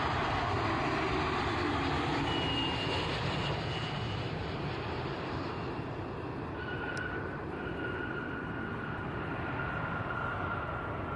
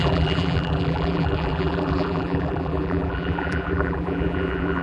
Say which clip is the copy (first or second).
second